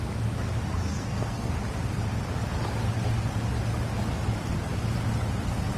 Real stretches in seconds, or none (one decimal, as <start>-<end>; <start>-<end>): 0.0-0.9; 1.5-5.8